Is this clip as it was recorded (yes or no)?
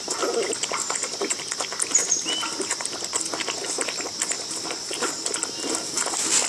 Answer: yes